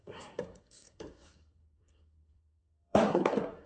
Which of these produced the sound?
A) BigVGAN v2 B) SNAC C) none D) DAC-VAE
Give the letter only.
B